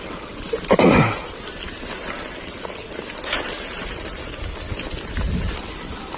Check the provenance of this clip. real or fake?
real